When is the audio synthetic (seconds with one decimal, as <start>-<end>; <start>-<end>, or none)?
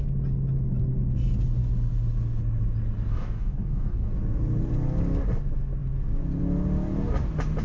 3.1-4.1